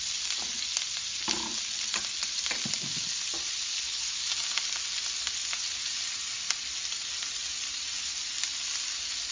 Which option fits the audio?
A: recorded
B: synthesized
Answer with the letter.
A